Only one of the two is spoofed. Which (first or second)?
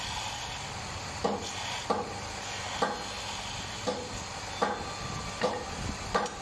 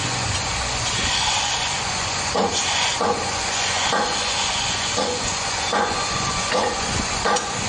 second